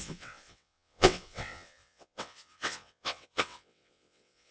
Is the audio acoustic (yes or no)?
no